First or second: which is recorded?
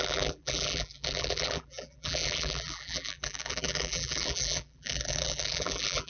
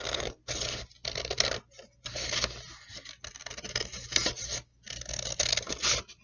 second